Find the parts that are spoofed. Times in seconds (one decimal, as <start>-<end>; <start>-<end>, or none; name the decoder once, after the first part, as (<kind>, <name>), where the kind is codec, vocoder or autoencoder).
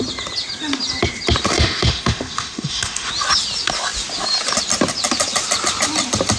1.5-3.1 (autoencoder, DAC-VAE)